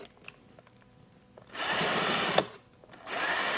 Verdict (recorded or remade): recorded